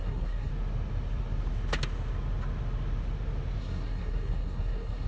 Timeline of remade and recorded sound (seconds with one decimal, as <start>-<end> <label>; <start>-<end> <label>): 0.0-0.5 remade; 0.5-3.6 recorded; 3.6-5.1 remade